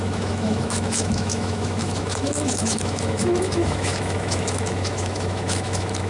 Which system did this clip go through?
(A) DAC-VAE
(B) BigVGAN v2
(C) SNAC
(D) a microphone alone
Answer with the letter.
A